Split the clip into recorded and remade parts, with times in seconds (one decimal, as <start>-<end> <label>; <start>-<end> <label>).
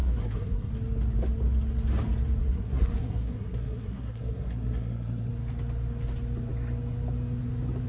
0.0-0.7 remade; 0.7-2.4 recorded; 2.4-5.3 remade; 5.3-7.9 recorded